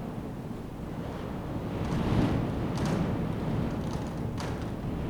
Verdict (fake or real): real